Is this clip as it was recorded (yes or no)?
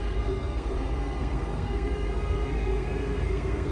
no